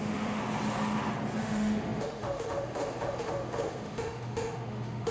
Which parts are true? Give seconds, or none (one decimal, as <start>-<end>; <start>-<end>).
0.4-1.4